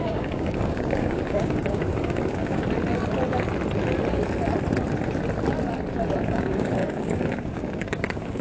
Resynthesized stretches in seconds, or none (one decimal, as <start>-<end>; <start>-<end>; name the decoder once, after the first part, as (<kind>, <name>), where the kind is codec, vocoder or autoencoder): 0.0-2.6 (codec, DAC); 6.2-8.4